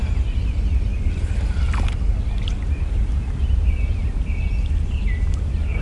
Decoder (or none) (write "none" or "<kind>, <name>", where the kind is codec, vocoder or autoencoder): none